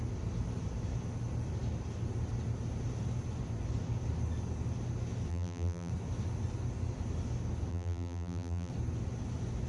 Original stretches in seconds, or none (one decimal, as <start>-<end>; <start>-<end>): 0.0-5.3; 5.9-7.7; 8.7-9.7